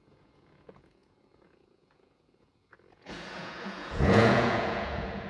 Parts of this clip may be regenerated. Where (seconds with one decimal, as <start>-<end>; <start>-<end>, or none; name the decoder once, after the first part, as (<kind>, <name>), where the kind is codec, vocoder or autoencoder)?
0.0-5.3 (vocoder, Vocos)

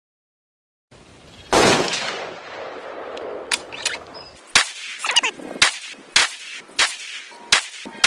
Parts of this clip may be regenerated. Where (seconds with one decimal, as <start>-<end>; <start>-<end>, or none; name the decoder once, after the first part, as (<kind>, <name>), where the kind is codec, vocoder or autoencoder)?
1.1-2.4 (vocoder, Vocos); 6.2-7.3

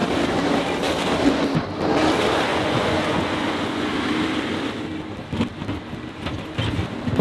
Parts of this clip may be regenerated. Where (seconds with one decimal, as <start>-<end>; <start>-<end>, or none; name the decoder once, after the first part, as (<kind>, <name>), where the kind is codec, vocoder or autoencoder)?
2.5-3.9 (vocoder, Vocos)

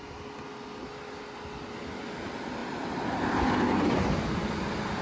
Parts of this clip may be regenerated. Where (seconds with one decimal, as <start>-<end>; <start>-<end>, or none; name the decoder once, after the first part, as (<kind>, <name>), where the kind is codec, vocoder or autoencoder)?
none

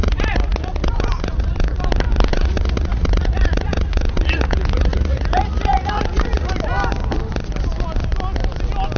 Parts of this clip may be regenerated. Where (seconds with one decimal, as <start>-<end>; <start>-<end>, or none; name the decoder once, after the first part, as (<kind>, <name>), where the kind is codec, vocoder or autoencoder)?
0.0-1.8 (vocoder, Vocos); 2.3-6.5

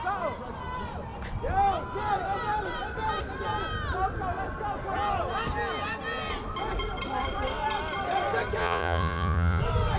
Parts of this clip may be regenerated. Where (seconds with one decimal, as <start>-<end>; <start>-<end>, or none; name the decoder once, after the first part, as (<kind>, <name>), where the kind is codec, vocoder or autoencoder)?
8.6-9.6 (vocoder, Vocos)

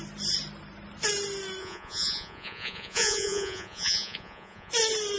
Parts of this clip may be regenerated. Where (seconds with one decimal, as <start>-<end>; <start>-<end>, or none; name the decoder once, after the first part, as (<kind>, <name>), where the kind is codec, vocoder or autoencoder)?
1.6-4.7 (vocoder, Vocos)